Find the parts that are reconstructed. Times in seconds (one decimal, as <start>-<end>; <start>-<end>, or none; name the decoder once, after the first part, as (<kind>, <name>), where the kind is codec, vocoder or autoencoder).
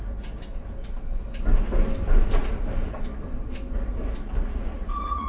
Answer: 4.7-5.3 (vocoder, Vocos)